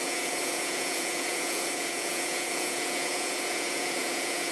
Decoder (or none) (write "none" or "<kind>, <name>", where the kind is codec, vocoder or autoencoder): vocoder, Vocos